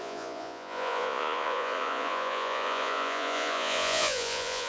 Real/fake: fake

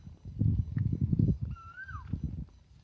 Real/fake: real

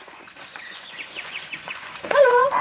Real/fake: fake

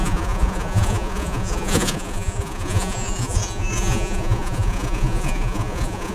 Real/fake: fake